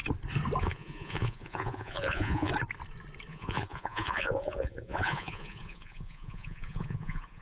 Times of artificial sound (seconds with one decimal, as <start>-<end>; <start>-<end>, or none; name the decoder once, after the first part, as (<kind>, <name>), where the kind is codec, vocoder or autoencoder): 0.6-2.5 (vocoder, Vocos); 3.3-7.4